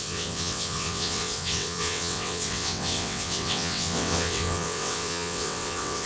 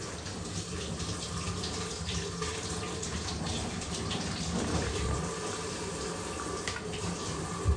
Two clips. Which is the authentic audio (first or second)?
second